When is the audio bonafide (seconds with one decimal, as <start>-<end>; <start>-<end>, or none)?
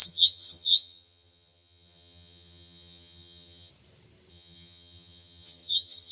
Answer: 3.7-4.3